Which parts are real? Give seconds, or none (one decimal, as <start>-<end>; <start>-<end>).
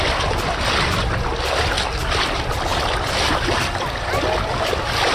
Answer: 0.0-5.1